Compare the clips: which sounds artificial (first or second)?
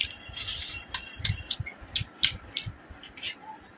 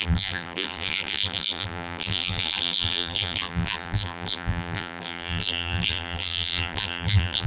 second